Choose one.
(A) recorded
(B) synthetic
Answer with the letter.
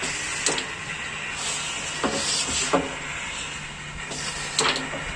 A